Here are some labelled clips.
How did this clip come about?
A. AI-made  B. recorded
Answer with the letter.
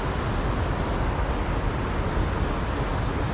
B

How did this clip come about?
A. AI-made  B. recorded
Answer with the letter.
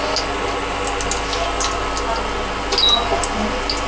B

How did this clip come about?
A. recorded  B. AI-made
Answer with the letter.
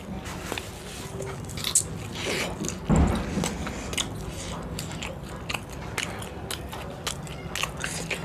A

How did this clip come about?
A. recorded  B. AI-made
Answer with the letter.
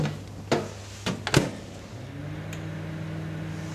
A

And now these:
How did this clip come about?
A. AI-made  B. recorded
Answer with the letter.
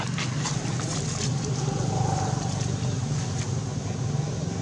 B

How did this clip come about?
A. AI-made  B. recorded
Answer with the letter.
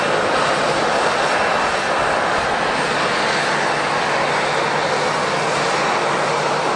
B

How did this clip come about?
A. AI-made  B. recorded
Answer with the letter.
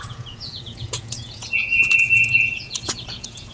A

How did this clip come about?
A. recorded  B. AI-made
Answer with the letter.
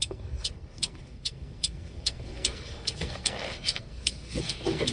B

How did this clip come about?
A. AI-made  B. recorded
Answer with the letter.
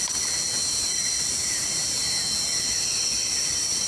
B